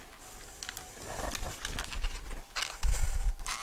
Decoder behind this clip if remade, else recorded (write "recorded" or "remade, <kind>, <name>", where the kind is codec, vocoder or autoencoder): recorded